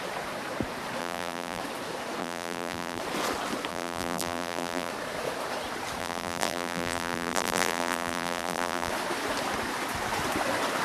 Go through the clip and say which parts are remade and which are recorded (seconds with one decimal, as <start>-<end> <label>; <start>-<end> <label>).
0.0-1.0 recorded; 1.0-1.6 remade; 1.6-2.2 recorded; 2.2-3.0 remade; 3.0-3.7 recorded; 3.7-4.9 remade; 4.9-6.0 recorded; 6.0-8.9 remade; 8.9-10.8 recorded